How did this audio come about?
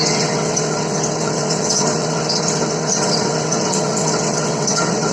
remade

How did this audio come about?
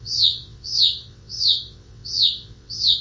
remade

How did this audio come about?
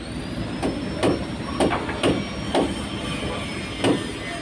recorded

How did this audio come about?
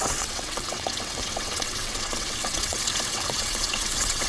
remade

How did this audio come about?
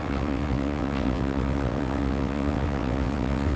remade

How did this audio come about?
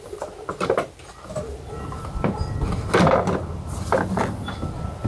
recorded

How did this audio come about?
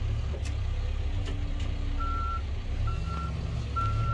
recorded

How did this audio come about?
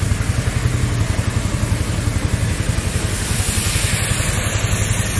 recorded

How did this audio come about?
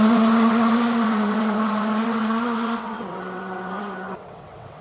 remade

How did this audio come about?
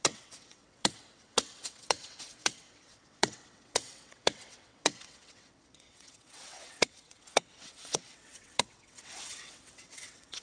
remade